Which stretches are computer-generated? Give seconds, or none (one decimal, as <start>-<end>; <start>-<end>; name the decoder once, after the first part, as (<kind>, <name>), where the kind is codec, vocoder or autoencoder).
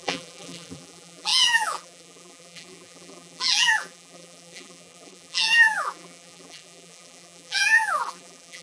0.0-8.6 (vocoder, BigVGAN v2)